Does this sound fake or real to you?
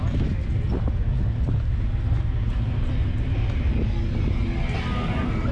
real